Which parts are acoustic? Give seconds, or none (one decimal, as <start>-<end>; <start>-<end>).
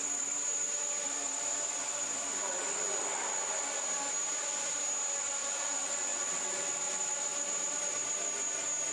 2.2-8.9